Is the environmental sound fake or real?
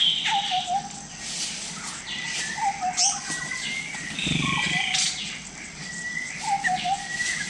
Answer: real